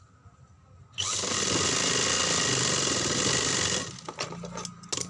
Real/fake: real